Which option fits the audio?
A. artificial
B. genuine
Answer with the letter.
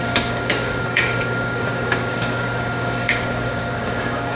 A